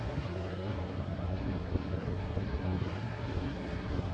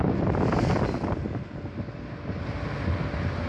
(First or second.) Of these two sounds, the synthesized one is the first